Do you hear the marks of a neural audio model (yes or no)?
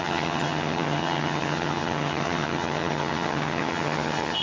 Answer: yes